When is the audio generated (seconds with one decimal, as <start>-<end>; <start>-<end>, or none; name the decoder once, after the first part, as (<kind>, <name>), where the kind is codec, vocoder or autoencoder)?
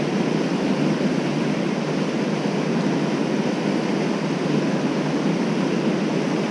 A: none